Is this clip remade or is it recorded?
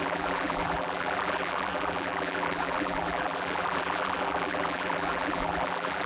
remade